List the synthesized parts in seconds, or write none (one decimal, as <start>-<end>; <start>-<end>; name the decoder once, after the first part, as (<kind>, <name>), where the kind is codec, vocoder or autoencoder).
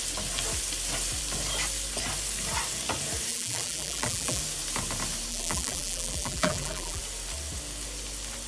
3.3-4.4 (vocoder, BigVGAN v2); 5.3-7.0